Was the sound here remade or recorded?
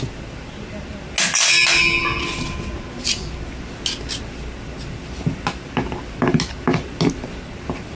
recorded